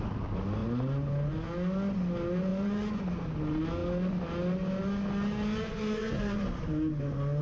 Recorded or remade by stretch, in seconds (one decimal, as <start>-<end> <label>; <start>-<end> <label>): 0.0-2.5 recorded; 2.5-3.0 remade; 3.0-5.7 recorded; 5.7-6.4 remade; 6.4-7.4 recorded